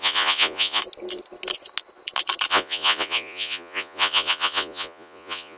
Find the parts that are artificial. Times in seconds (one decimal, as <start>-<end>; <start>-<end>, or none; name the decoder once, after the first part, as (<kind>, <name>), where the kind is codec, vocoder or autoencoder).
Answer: 0.0-0.8 (vocoder, Vocos); 2.5-5.6